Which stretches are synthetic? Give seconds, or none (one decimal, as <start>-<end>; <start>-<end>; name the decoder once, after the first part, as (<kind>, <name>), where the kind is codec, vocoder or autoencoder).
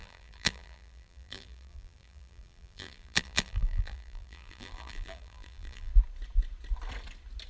0.0-5.9 (vocoder, BigVGAN v2)